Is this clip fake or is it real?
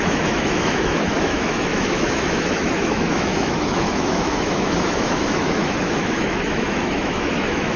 fake